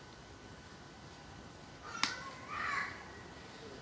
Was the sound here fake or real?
real